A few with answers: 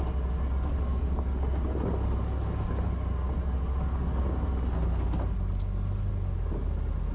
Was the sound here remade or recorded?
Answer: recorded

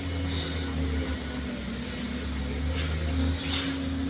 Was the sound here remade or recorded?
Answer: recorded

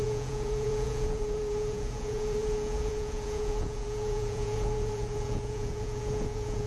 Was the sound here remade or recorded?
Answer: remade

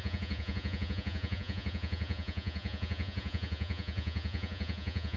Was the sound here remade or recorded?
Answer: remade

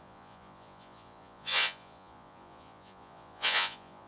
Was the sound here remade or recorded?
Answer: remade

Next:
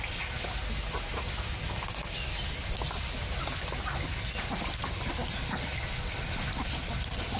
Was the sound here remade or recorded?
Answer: recorded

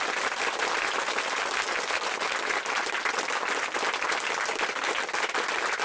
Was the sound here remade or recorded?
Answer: recorded